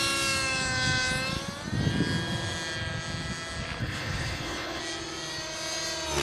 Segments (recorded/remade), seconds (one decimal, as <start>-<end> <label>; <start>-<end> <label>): 0.0-3.8 recorded; 3.8-4.8 remade; 4.8-6.2 recorded